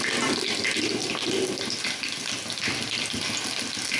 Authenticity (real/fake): real